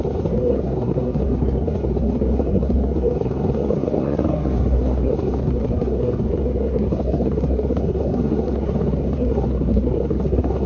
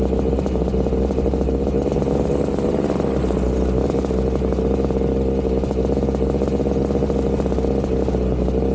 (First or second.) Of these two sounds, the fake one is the first